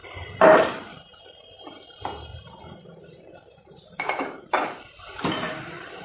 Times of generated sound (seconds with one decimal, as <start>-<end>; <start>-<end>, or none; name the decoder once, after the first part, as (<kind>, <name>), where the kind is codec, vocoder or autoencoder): 0.0-1.2 (vocoder, BigVGAN v2); 2.3-5.2

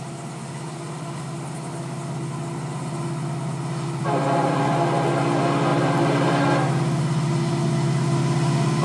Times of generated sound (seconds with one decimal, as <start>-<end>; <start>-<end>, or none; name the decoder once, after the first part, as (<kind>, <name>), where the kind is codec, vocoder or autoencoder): 4.0-4.6 (vocoder, BigVGAN v2); 5.7-6.3

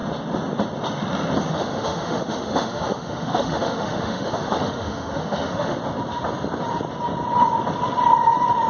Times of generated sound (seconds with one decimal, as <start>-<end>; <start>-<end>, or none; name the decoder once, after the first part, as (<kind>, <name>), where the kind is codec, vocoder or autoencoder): 1.5-5.8 (autoencoder, DAC-VAE)